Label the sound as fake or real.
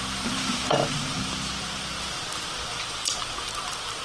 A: real